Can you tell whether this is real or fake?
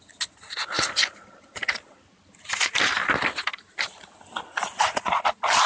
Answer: real